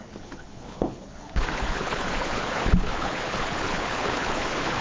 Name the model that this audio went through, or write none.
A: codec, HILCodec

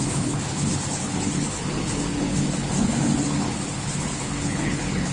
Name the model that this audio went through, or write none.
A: codec, HILCodec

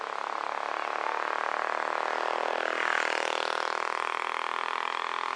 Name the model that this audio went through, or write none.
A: none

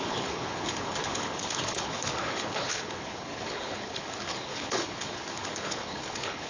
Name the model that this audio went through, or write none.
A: codec, HILCodec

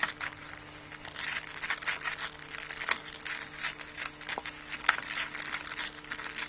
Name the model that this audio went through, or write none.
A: none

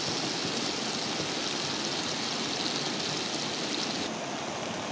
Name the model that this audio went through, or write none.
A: none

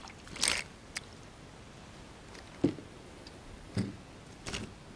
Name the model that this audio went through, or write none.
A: none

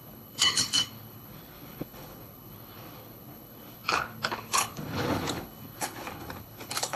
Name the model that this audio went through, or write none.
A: codec, HILCodec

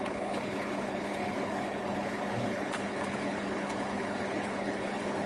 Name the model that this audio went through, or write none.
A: codec, HILCodec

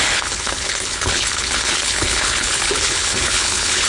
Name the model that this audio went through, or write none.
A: codec, HILCodec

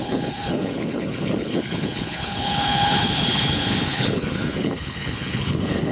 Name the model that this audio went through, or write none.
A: codec, HILCodec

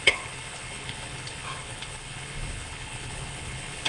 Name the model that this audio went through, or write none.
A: codec, HILCodec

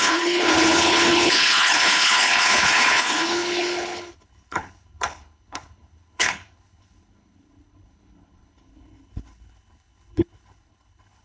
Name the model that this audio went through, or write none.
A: codec, HILCodec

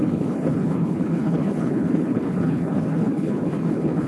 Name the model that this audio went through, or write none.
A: codec, HILCodec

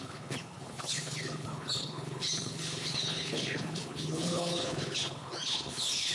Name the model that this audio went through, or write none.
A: codec, HILCodec